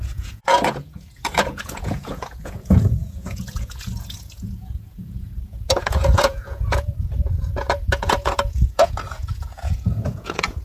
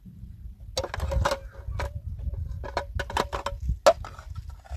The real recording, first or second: second